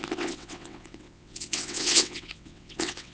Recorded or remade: remade